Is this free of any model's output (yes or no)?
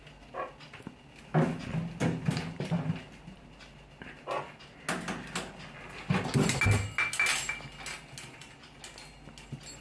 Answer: yes